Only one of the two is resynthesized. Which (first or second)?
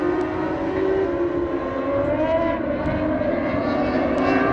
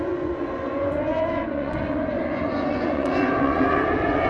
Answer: second